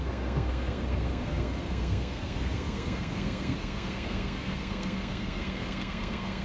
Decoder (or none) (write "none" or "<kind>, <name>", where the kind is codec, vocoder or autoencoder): codec, SNAC